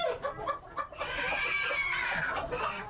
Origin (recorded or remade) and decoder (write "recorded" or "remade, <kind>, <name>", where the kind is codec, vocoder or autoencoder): recorded